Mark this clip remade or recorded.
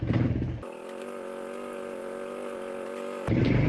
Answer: recorded